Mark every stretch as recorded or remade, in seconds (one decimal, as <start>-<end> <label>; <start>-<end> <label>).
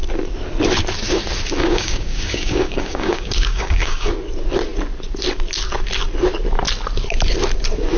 0.0-1.6 recorded; 1.6-4.1 remade; 4.1-8.0 recorded